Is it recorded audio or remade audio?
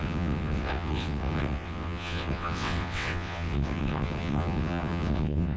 remade